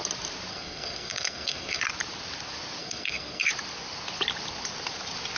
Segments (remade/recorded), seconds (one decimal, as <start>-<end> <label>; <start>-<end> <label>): 0.0-0.5 recorded; 0.5-1.8 remade; 1.8-2.8 recorded; 2.8-3.5 remade; 3.5-5.4 recorded